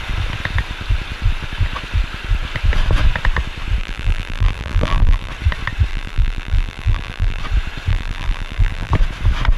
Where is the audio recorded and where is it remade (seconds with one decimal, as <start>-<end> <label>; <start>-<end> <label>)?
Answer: 0.0-3.8 recorded; 3.8-5.3 remade; 5.3-5.9 recorded; 5.9-7.4 remade; 7.4-7.9 recorded; 7.9-8.9 remade; 8.9-9.6 recorded